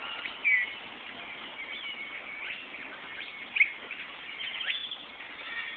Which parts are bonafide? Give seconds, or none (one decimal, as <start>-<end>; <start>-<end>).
0.0-5.8